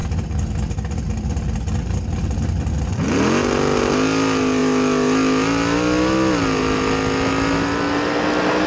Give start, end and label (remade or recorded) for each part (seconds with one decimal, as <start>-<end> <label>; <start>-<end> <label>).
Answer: 0.0-8.7 recorded